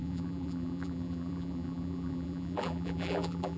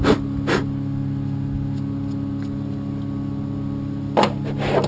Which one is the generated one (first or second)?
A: first